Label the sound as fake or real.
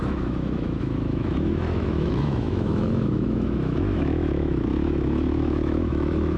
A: fake